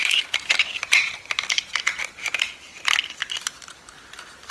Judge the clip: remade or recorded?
recorded